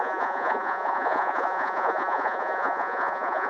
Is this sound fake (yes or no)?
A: yes